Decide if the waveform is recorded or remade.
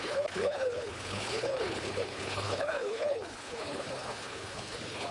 remade